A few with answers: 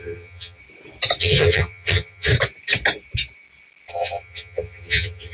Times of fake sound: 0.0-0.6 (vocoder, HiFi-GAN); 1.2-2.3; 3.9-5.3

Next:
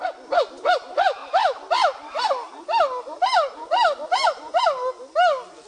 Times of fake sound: none

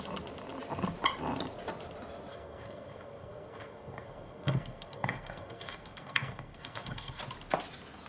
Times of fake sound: 2.3-7.2 (codec, SNAC)

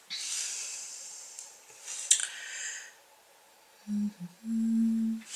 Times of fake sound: none

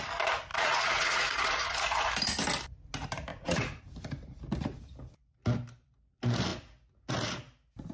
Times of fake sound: 0.5-2.1 (vocoder, Vocos); 3.3-3.8

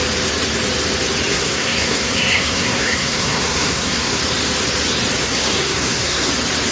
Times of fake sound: 1.3-4.2 (codec, SNAC); 5.2-6.3

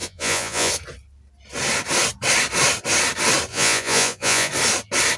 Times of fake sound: 0.0-0.7 (vocoder, Vocos); 3.5-4.5